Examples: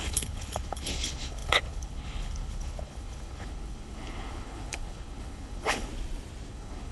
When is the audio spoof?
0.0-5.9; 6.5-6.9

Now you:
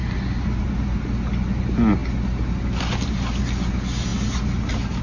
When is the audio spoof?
none

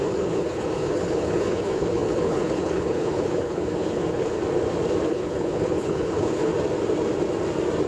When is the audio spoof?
0.0-4.4; 5.0-6.5